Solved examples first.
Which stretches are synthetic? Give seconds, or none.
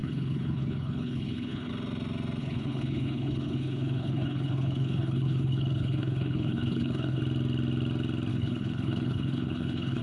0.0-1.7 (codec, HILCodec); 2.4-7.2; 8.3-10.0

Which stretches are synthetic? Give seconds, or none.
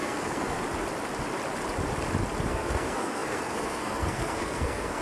0.0-0.6 (codec, SNAC); 2.5-5.0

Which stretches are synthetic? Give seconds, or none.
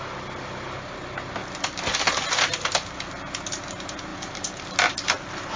none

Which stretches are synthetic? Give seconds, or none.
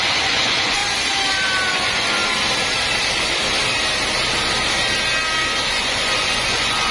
0.0-0.8 (vocoder, Vocos); 1.7-2.2; 5.7-6.9